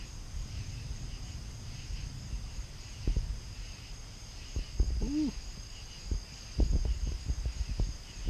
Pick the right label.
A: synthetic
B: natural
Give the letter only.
B